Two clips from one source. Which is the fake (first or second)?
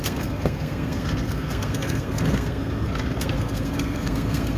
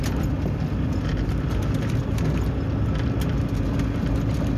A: first